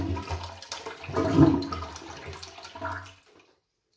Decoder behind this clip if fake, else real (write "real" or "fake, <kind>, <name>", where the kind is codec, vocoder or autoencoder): real